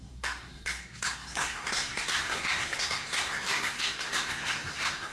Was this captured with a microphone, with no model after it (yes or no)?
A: no